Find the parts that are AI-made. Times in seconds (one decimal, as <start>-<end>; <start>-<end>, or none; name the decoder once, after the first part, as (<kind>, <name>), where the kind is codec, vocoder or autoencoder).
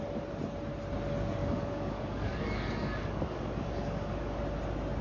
1.4-4.4 (codec, DAC)